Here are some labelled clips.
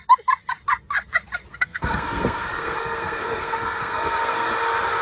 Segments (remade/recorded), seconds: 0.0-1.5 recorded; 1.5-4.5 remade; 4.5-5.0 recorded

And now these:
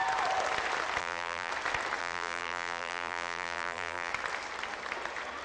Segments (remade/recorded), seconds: 0.0-1.0 recorded; 1.0-1.5 remade; 1.5-2.0 recorded; 2.0-4.1 remade; 4.1-5.4 recorded

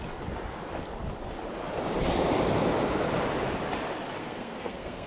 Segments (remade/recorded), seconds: 0.0-4.2 recorded; 4.2-5.1 remade

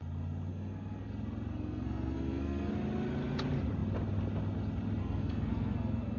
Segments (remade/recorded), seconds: 0.0-0.5 recorded; 0.5-1.1 remade; 1.1-1.5 recorded; 1.5-2.7 remade; 2.7-5.0 recorded; 5.0-6.2 remade

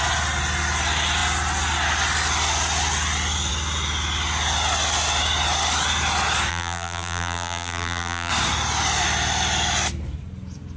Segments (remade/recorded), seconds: 0.0-6.5 recorded; 6.5-8.3 remade; 8.3-10.8 recorded

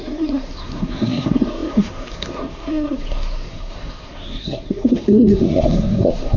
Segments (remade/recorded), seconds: 0.0-6.4 remade

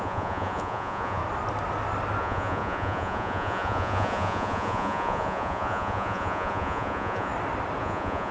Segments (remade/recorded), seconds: 0.0-1.2 remade; 1.2-2.2 recorded; 2.2-7.3 remade; 7.3-7.8 recorded; 7.8-8.3 remade

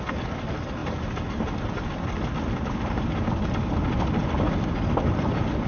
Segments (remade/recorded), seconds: 0.0-5.7 recorded